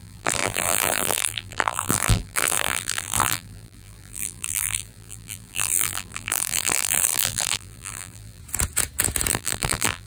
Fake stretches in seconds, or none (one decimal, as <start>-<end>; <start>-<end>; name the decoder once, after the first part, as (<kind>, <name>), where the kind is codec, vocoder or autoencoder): 0.0-8.4 (vocoder, BigVGAN v2); 9.3-10.1